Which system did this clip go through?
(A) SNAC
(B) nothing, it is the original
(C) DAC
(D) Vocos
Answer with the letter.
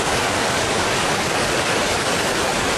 C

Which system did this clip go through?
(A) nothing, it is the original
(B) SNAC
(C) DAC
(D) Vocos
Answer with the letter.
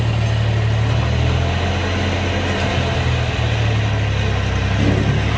A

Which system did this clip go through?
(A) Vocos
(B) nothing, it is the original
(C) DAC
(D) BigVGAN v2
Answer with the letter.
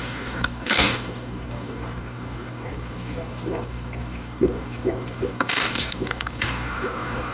C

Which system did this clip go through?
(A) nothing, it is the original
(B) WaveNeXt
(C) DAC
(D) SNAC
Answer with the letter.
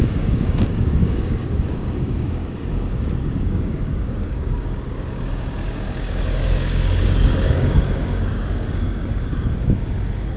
C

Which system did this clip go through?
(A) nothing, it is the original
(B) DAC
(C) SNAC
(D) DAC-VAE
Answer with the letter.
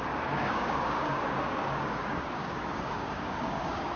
B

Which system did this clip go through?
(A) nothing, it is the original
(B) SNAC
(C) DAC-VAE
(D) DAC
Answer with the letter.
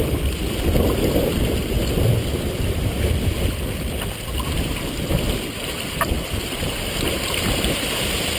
A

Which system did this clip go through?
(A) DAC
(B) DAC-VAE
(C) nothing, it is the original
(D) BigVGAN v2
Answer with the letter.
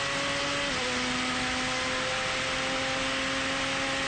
C